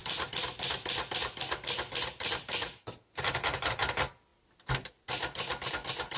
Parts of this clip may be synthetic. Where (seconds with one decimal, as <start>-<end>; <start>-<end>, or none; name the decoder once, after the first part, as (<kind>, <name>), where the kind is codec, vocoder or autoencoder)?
none